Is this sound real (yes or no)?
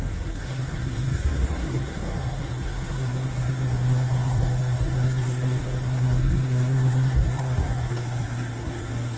no